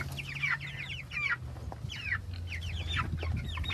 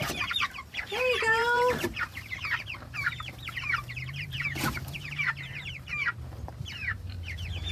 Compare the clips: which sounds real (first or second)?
first